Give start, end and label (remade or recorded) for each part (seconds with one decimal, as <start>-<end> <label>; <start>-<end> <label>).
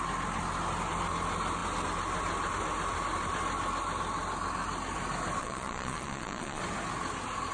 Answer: 0.0-5.4 recorded; 5.4-6.6 remade; 6.6-7.5 recorded